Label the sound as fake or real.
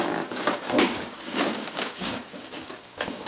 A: fake